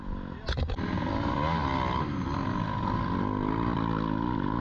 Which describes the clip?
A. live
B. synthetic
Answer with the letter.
A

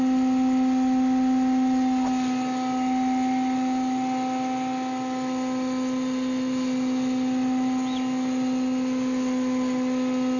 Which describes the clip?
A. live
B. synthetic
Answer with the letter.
A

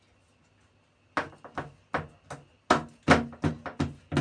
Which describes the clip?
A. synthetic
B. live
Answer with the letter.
B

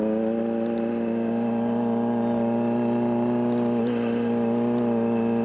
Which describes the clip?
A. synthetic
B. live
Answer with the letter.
B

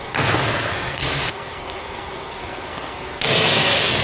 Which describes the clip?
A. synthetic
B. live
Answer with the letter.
A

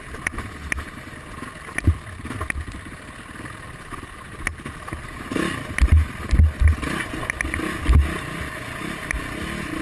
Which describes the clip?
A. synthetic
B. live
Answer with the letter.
B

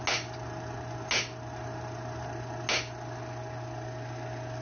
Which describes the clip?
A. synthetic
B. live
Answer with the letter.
B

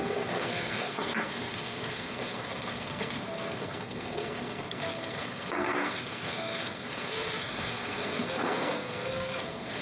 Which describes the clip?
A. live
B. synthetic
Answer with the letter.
B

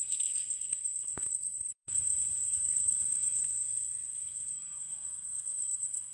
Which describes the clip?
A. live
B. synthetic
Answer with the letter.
B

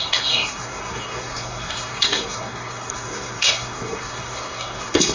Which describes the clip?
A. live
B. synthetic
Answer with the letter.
B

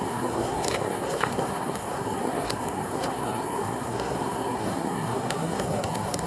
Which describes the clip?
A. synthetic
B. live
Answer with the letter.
A